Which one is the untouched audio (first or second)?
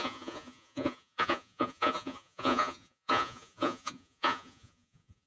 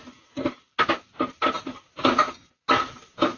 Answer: second